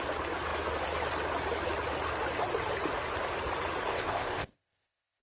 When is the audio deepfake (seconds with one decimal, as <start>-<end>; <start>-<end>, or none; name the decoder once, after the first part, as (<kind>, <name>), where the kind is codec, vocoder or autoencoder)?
3.9-5.2 (codec, ZipCodec)